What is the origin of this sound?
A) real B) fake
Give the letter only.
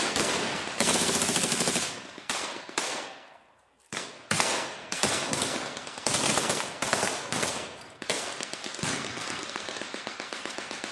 B